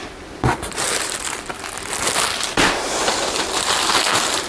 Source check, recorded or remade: remade